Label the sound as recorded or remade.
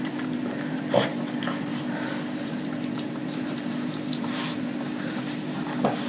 remade